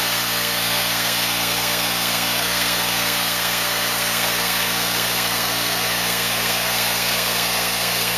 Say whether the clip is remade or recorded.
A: remade